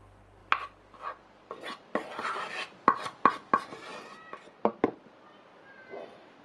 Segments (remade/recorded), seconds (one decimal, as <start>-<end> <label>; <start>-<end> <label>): 0.0-0.4 recorded; 0.4-3.2 remade; 3.2-6.4 recorded